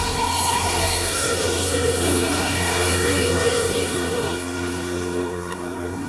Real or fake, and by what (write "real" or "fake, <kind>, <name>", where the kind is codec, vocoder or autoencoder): fake, codec, SNAC